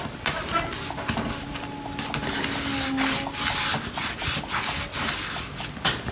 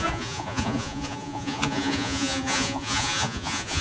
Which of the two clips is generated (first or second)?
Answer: second